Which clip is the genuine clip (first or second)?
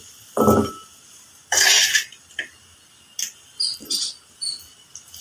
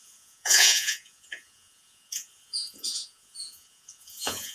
first